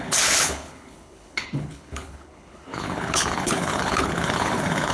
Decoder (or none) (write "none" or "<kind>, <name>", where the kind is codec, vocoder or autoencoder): codec, HILCodec